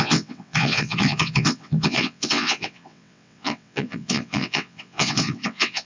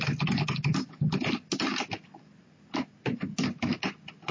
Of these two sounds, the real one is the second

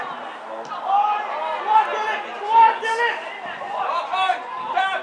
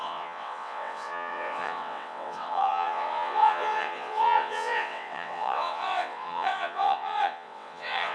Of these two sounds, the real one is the first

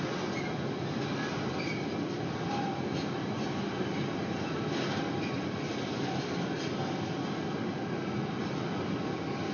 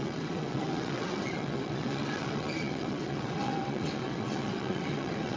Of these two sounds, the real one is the first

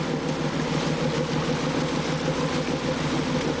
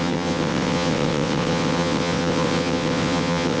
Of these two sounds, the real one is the first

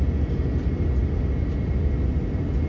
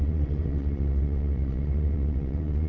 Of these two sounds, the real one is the first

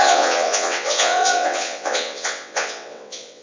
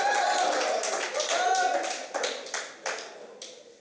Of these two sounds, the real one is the second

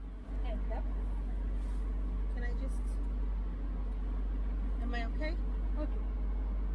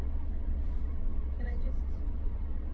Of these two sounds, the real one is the first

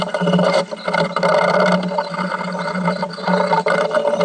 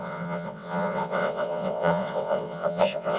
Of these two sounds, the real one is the first